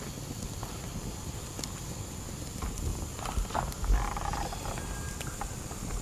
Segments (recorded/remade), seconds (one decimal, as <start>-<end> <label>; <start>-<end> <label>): 0.0-6.0 recorded